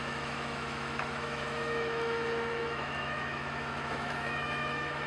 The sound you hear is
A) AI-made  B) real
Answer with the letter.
A